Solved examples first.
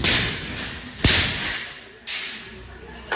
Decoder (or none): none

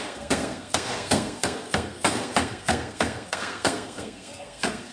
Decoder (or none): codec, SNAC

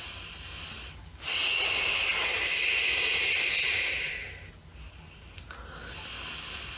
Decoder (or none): none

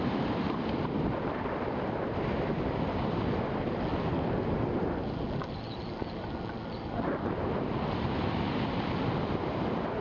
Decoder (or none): none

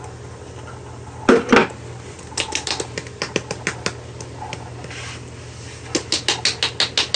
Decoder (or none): none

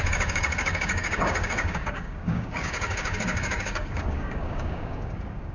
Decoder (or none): codec, DAC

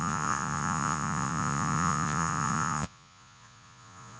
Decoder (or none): vocoder, Vocos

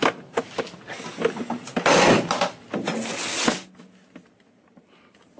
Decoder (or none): none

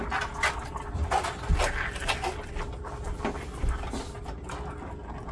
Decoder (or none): none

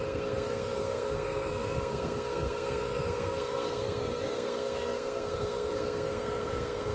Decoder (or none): codec, SNAC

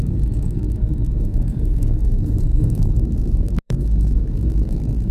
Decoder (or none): codec, SNAC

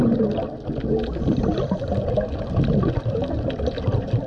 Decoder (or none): none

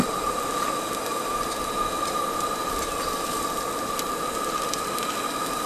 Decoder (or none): none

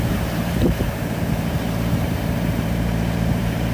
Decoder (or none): vocoder, BigVGAN v2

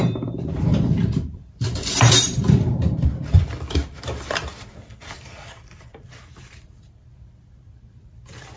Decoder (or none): vocoder, BigVGAN v2